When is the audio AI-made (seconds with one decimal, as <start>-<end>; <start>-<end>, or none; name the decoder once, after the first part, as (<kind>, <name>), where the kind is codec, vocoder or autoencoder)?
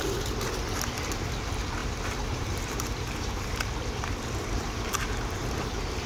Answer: none